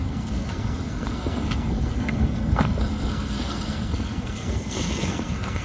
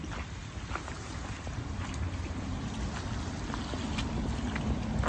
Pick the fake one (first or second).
first